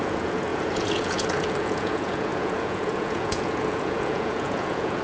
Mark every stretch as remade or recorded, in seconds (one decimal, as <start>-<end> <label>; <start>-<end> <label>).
0.0-5.0 remade